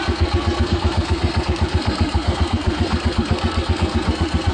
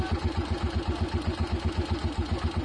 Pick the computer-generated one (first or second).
first